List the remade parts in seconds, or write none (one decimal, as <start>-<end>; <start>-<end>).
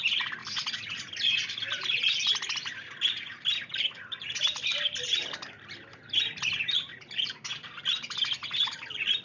none